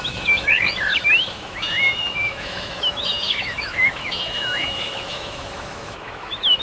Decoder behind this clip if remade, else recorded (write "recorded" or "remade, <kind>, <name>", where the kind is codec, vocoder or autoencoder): remade, autoencoder, DAC-VAE